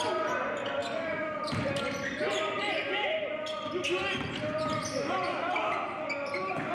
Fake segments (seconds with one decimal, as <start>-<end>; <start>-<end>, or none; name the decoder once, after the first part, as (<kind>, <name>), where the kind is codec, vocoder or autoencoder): 0.8-1.7 (vocoder, BigVGAN v2)